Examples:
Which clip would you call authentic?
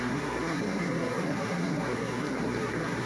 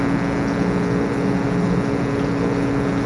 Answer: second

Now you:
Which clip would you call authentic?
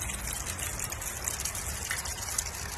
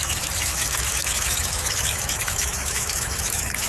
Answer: first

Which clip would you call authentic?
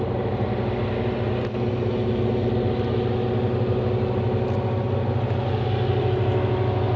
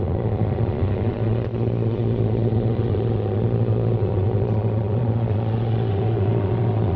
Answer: first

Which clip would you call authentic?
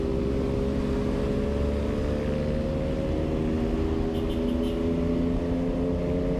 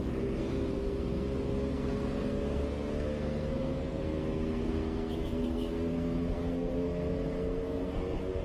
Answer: first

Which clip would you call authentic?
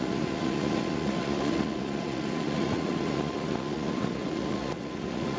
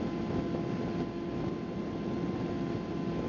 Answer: second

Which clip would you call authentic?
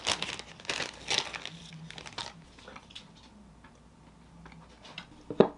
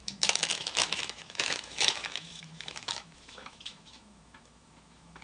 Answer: first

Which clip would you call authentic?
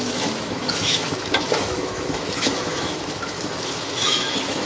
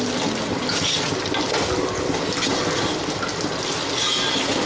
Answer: second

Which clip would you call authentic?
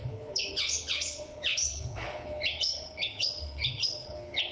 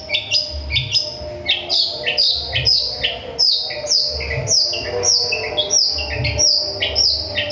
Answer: second